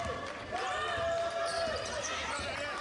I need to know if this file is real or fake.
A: real